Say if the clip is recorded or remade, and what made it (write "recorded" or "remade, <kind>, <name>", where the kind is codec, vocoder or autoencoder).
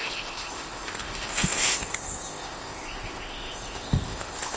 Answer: remade, codec, ZipCodec